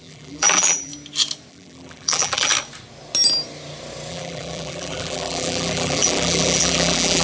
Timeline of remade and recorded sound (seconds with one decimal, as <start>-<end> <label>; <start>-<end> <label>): 0.0-0.9 remade; 0.9-1.5 recorded; 1.5-2.5 remade; 2.5-4.1 recorded; 4.1-7.2 remade